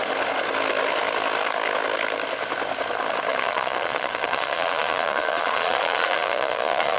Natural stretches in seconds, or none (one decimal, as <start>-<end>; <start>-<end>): 0.0-3.3